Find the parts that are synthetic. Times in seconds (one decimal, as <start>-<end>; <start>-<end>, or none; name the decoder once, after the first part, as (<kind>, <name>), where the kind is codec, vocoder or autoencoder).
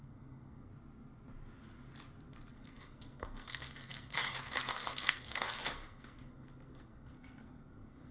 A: 0.0-0.7 (codec, SNAC); 2.5-8.1